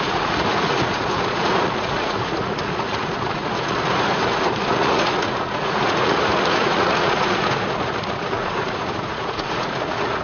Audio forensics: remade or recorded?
remade